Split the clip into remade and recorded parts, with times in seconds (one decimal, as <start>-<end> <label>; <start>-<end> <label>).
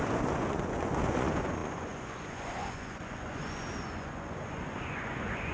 0.0-5.5 remade